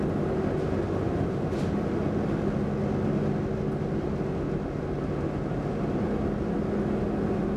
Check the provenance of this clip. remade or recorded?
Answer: recorded